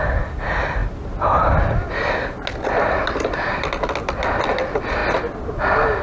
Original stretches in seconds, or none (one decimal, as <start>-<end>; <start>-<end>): 0.0-6.0